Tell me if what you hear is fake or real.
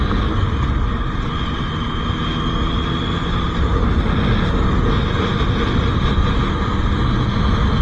real